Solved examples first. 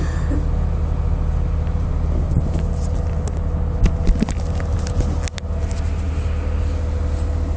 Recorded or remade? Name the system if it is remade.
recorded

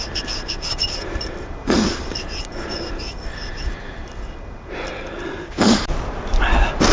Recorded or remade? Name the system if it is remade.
recorded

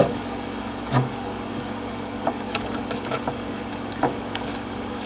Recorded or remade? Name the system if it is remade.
remade, codec, DAC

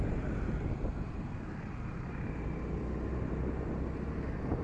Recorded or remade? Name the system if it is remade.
recorded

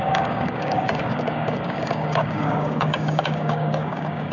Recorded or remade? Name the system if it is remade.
remade, codec, DAC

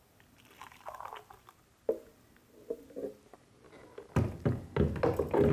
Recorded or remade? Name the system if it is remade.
recorded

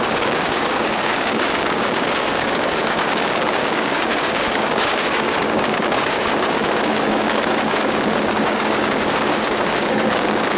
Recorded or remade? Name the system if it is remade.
remade, codec, DAC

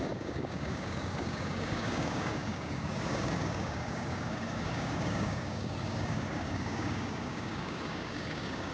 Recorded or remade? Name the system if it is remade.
remade, codec, DAC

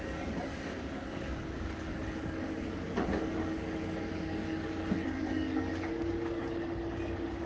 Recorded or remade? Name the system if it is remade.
remade, codec, DAC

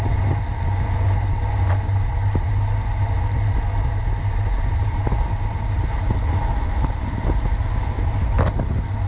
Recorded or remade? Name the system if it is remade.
recorded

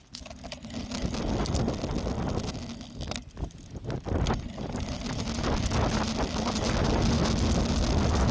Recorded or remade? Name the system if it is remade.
recorded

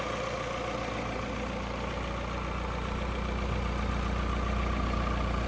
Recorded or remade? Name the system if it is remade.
recorded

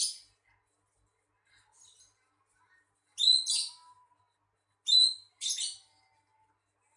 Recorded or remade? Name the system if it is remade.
recorded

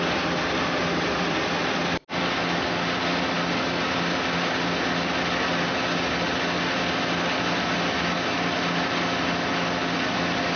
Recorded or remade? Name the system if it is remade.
recorded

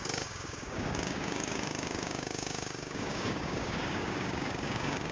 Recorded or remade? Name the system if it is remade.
remade, codec, DAC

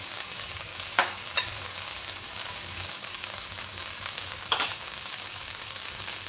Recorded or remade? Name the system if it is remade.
remade, codec, DAC